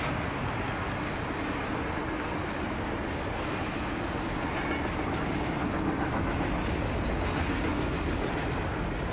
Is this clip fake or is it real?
real